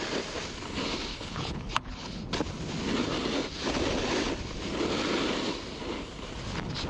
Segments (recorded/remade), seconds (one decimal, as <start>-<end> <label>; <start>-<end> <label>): 0.0-1.1 recorded; 1.1-2.2 remade; 2.2-6.9 recorded